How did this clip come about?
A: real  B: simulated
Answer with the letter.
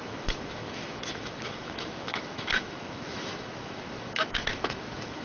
B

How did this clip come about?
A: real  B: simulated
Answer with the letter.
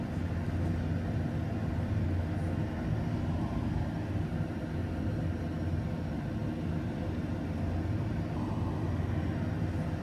A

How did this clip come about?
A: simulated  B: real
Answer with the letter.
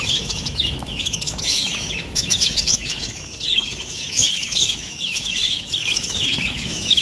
A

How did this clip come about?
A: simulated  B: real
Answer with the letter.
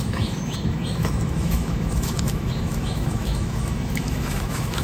A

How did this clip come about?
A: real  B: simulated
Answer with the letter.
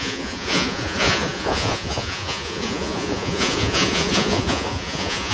B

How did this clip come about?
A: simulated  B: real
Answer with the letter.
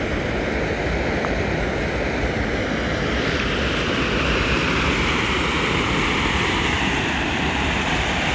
B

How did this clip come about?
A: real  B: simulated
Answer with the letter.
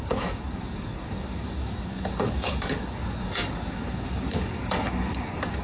B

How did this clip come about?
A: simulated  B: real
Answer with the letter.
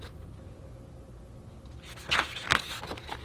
B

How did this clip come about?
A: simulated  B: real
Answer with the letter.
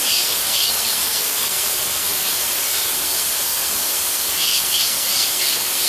A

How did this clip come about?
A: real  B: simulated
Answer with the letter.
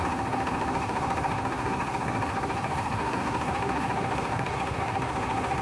B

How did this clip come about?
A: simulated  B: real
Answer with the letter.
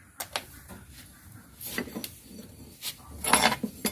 B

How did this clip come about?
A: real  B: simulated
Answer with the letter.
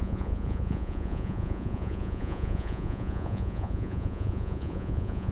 B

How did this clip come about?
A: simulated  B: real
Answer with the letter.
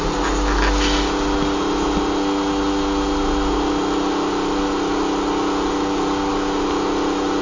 B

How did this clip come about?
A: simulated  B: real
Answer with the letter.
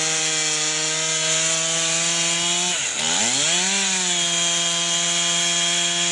B